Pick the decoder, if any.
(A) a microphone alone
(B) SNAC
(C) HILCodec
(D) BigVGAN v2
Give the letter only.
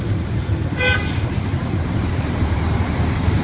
D